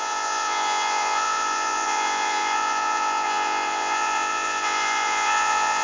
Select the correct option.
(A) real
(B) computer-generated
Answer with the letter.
B